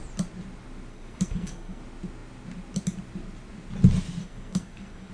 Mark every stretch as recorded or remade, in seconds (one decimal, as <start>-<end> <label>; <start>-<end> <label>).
0.0-0.9 recorded; 0.9-1.8 remade; 1.8-4.2 recorded; 4.2-5.1 remade

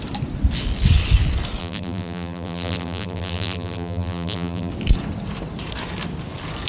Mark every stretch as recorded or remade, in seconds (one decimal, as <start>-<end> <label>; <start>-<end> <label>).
0.0-1.6 recorded; 1.6-4.7 remade; 4.7-6.7 recorded

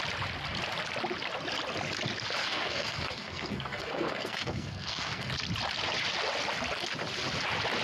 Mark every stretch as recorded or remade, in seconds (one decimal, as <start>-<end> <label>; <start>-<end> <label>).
0.0-2.4 recorded; 2.4-5.3 remade; 5.3-7.8 recorded